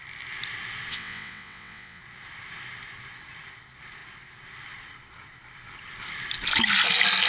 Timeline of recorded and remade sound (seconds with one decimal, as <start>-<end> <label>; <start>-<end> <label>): 0.0-0.9 recorded; 0.9-2.0 remade; 2.0-7.3 recorded